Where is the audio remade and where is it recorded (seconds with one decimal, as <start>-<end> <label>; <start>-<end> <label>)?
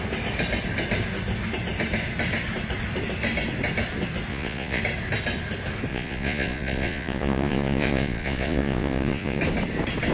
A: 0.0-4.3 recorded; 4.3-4.8 remade; 4.8-5.9 recorded; 5.9-9.4 remade; 9.4-10.1 recorded